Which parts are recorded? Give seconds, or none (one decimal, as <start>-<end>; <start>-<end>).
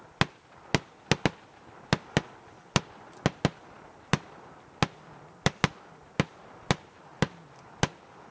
0.0-8.3